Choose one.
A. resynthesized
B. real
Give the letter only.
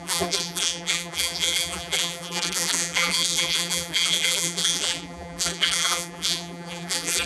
A